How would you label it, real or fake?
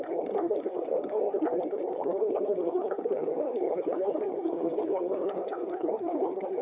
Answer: fake